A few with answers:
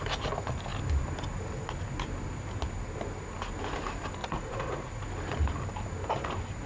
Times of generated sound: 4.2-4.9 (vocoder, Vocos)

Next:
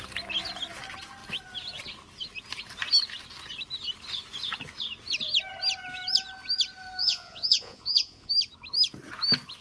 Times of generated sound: 7.0-8.3 (vocoder, Vocos)

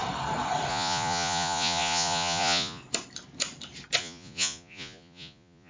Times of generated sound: 0.7-2.8 (vocoder, Vocos); 4.0-5.7